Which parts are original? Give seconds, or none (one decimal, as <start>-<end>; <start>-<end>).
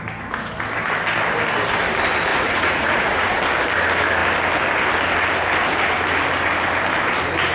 0.0-2.3; 3.4-7.5